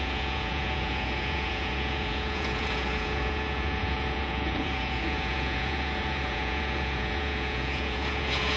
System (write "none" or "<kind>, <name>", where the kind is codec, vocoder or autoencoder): vocoder, Vocos